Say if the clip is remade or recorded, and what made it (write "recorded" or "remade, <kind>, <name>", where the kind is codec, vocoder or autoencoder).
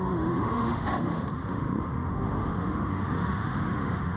remade, autoencoder, DAC-VAE